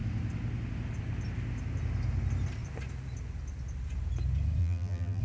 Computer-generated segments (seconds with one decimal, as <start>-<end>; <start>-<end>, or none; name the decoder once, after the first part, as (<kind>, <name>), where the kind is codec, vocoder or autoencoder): 4.6-5.2 (vocoder, BigVGAN v2)